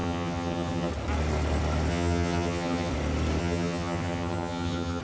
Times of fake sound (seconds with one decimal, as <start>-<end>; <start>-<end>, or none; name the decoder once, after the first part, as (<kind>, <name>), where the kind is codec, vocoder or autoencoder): 0.0-0.9 (vocoder, HiFi-GAN); 1.9-2.9; 3.4-5.0